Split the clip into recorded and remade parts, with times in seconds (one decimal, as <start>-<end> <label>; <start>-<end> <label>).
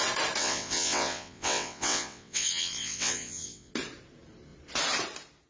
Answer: 0.0-0.4 recorded; 0.4-3.7 remade; 3.7-5.5 recorded